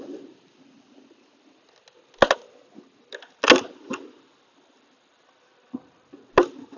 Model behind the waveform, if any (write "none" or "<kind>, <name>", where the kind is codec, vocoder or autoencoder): none